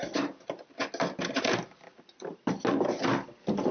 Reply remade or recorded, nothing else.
recorded